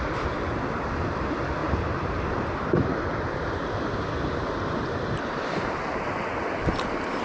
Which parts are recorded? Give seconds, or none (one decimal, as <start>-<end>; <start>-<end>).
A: 0.0-1.6; 5.9-7.2